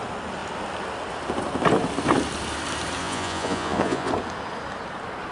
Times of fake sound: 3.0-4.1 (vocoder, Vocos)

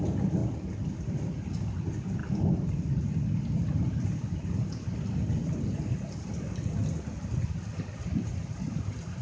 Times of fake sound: none

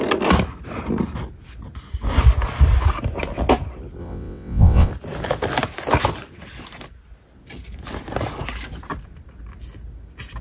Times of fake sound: 4.0-4.9 (vocoder, WaveNeXt)

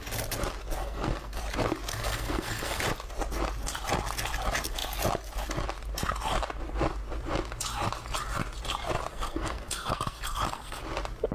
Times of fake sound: 0.8-1.4 (codec, SNAC); 1.9-2.8; 9.1-10.8

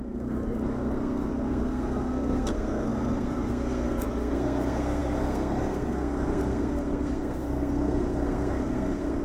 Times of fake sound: 0.0-9.2 (codec, SNAC)

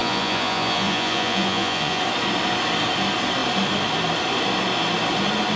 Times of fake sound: 0.0-2.0 (vocoder, Vocos)